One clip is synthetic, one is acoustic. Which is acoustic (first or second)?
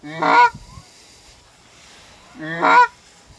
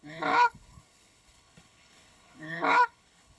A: first